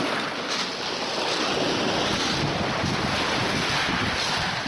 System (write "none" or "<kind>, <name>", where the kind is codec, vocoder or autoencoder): none